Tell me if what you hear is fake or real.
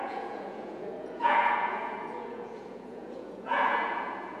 fake